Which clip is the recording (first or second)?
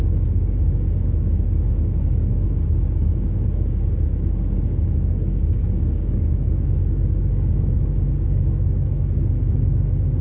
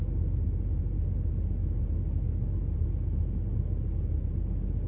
second